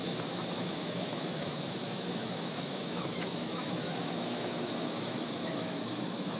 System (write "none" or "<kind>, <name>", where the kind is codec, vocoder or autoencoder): autoencoder, DAC-VAE